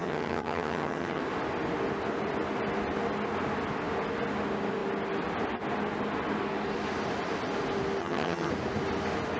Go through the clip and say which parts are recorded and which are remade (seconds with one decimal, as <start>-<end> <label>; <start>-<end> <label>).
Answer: 0.0-1.2 remade; 1.2-8.0 recorded; 8.0-8.5 remade; 8.5-9.4 recorded

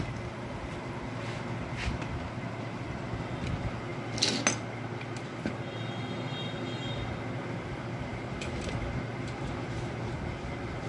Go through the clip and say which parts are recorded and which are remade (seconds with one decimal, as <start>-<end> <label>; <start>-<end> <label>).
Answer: 0.0-10.9 recorded

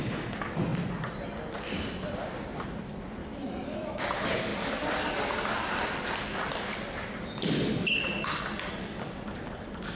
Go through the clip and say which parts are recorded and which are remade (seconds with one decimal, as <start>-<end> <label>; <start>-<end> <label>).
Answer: 0.0-3.2 recorded; 3.2-3.9 remade; 3.9-9.9 recorded

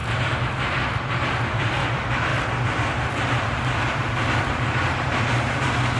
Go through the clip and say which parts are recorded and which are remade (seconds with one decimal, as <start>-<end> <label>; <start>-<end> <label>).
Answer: 0.0-1.1 recorded; 1.1-6.0 remade

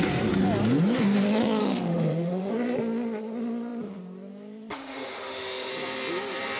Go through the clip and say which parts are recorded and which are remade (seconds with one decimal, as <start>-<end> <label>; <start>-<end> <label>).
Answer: 0.0-1.6 recorded; 1.6-2.5 remade; 2.5-4.7 recorded; 4.7-5.7 remade; 5.7-6.6 recorded

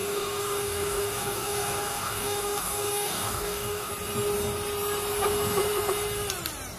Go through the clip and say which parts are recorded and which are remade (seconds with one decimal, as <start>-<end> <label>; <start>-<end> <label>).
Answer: 0.0-3.9 remade; 3.9-6.8 recorded

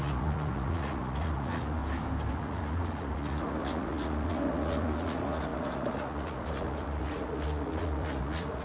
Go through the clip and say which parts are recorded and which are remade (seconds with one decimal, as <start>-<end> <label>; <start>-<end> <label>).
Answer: 0.0-1.8 remade; 1.8-2.3 recorded; 2.3-8.6 remade

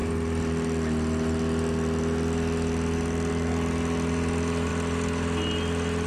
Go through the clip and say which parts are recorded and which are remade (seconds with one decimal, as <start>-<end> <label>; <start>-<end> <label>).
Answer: 0.0-6.1 recorded